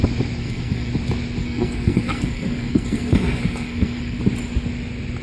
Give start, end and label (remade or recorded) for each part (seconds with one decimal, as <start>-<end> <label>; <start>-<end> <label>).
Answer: 0.0-0.4 recorded; 0.4-0.9 remade; 0.9-1.4 recorded; 1.4-4.2 remade; 4.2-5.2 recorded